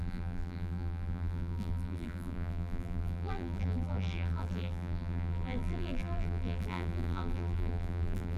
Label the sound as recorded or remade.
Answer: remade